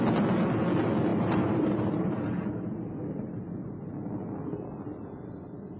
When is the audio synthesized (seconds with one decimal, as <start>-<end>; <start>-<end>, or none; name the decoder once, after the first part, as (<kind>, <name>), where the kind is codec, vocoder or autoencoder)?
1.1-3.8 (vocoder, BigVGAN v2)